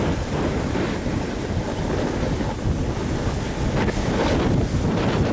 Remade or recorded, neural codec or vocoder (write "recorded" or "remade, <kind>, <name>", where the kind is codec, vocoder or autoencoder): recorded